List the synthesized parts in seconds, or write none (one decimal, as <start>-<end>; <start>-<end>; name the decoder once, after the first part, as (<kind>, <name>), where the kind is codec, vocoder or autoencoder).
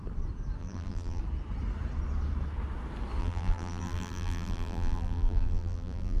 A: 0.6-1.2 (vocoder, BigVGAN v2); 3.2-6.2